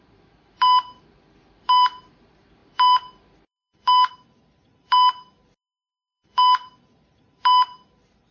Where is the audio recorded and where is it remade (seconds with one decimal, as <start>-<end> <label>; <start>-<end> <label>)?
0.0-8.3 remade